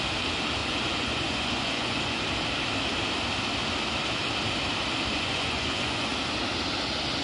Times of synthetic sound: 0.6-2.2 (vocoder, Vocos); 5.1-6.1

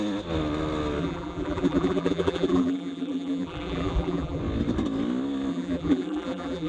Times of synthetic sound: 1.0-4.4 (vocoder, BigVGAN v2); 5.5-6.7

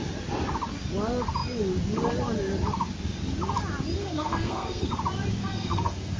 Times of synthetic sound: 4.0-4.9 (codec, SNAC); 5.4-6.2

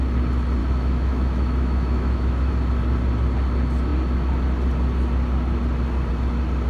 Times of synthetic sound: 0.6-2.5 (autoencoder, DAC-VAE)

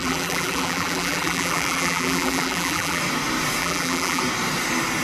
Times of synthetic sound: 0.0-3.0 (vocoder, BigVGAN v2); 3.6-4.2

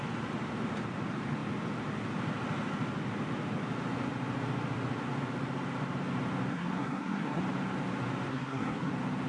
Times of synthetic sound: 6.5-7.4 (codec, SNAC); 8.3-8.9